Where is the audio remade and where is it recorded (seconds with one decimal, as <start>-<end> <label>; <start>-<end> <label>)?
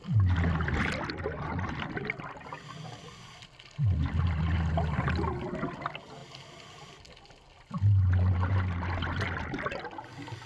0.0-10.5 recorded